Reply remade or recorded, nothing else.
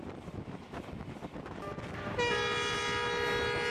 recorded